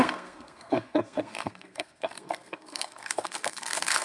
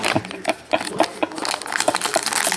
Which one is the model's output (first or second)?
first